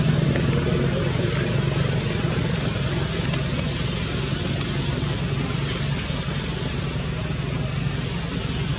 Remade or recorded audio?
recorded